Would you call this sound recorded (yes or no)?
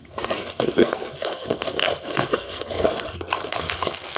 no